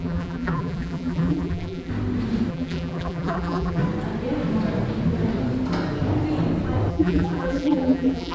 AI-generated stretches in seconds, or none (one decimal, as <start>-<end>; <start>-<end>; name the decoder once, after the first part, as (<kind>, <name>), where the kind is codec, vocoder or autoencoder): 0.0-1.9 (vocoder, BigVGAN v2); 2.5-3.8; 6.9-8.3